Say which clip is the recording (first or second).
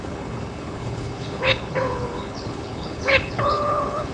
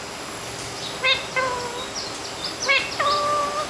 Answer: second